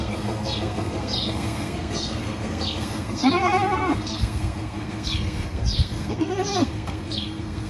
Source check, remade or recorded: remade